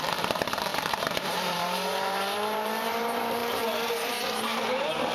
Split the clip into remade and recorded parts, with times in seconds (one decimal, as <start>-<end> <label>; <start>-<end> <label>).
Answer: 0.0-5.1 remade